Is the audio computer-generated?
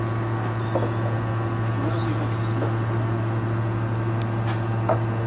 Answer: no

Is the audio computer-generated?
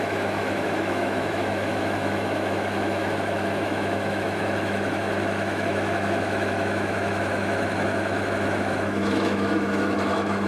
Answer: yes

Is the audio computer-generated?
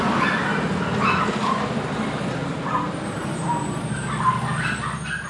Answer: no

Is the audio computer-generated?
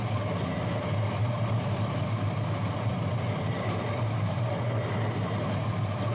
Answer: no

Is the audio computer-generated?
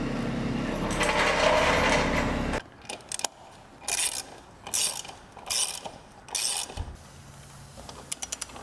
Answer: no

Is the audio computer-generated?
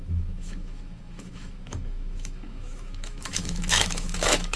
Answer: yes